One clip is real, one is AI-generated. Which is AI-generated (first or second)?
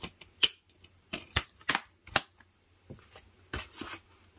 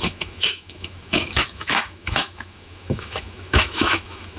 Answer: second